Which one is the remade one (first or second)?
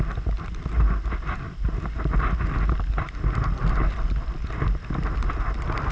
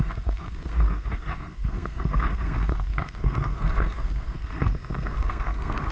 second